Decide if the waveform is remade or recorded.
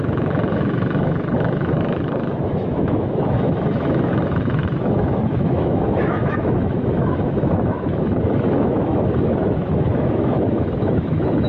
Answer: remade